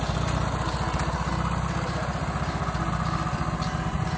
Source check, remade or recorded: recorded